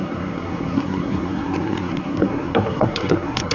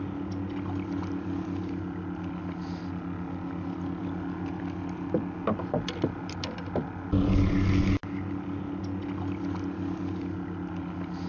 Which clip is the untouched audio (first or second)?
second